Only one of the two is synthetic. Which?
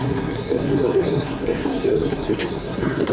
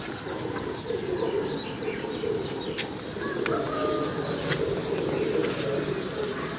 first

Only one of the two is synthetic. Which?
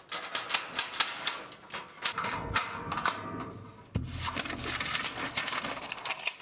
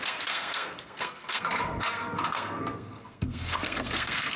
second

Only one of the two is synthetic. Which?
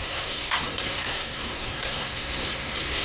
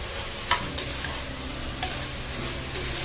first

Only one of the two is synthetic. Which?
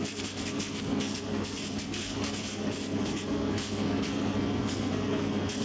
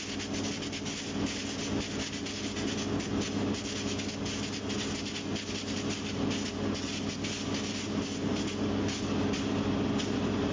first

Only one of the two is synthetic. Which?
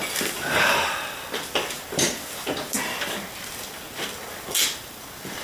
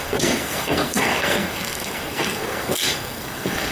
second